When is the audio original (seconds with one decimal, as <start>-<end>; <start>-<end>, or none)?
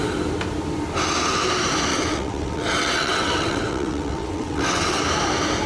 0.0-1.9; 5.0-5.7